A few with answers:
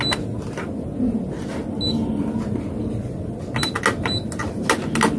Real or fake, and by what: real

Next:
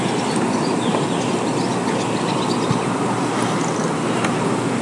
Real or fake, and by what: real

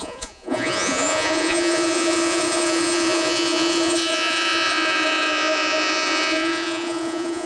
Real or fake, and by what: fake, vocoder, Vocos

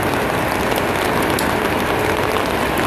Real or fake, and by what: real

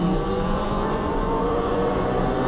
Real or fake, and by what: fake, vocoder, Vocos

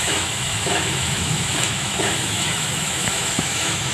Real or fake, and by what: fake, autoencoder, DAC-VAE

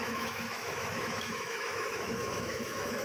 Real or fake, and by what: fake, autoencoder, DAC-VAE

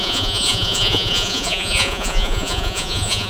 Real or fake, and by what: fake, vocoder, Vocos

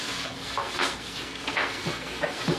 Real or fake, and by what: fake, codec, SNAC